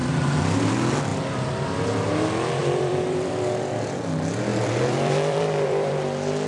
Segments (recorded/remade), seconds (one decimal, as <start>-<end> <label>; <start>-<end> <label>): 0.0-1.1 recorded; 1.1-1.8 remade; 1.8-2.6 recorded; 2.6-3.3 remade; 3.3-4.5 recorded; 4.5-5.9 remade; 5.9-6.5 recorded